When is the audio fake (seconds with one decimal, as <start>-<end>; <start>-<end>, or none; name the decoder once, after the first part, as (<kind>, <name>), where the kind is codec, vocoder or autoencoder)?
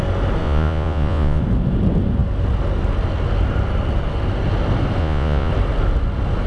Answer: 0.4-1.4 (vocoder, Vocos); 5.0-5.5